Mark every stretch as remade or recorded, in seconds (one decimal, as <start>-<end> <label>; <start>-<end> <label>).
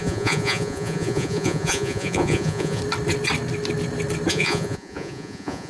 0.0-2.8 remade; 2.8-4.3 recorded; 4.3-5.7 remade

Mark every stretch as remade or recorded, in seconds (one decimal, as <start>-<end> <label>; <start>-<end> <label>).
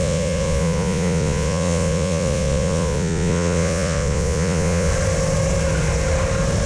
0.0-4.9 remade; 4.9-6.7 recorded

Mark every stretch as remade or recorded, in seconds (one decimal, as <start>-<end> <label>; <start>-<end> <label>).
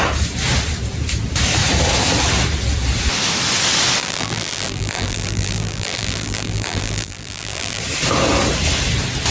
0.0-4.0 recorded; 4.0-7.8 remade; 7.8-9.3 recorded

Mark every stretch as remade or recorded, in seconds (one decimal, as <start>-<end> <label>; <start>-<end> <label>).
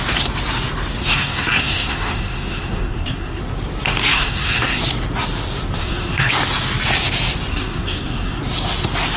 0.0-1.0 recorded; 1.0-3.4 remade; 3.4-4.1 recorded; 4.1-4.8 remade; 4.8-5.8 recorded; 5.8-6.3 remade; 6.3-7.5 recorded; 7.5-8.4 remade; 8.4-9.2 recorded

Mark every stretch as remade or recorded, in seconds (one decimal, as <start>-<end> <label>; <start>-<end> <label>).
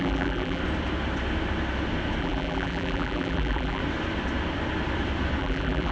0.0-0.6 remade; 0.6-2.2 recorded; 2.2-3.8 remade; 3.8-5.4 recorded; 5.4-5.9 remade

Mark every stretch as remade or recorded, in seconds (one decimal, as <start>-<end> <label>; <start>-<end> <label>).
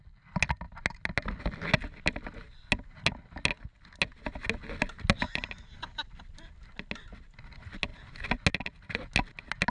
0.0-9.7 recorded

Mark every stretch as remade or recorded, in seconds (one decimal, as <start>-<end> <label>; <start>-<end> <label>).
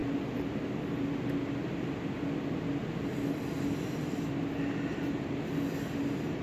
0.0-6.4 recorded